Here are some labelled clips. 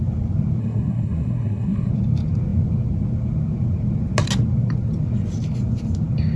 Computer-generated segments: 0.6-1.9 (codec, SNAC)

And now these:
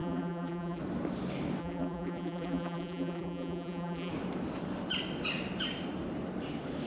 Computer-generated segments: 0.0-0.8 (vocoder, BigVGAN v2); 1.6-4.1

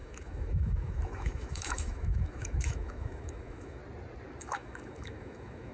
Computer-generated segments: 0.0-3.8 (autoencoder, DAC-VAE); 4.4-5.7

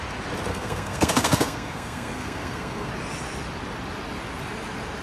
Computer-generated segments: 0.5-2.9 (codec, SNAC)

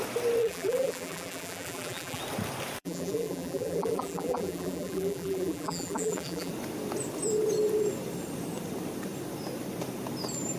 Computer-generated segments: 0.4-2.2 (vocoder, BigVGAN v2); 2.8-6.5

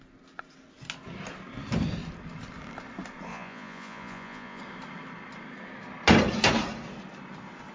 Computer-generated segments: 3.3-4.6 (vocoder, Vocos)

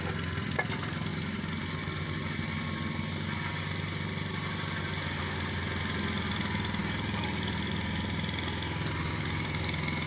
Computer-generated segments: none